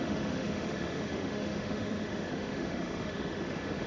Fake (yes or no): yes